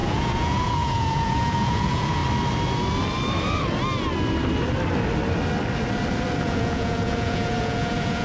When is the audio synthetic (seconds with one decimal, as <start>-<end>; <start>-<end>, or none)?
0.0-2.2; 6.4-8.2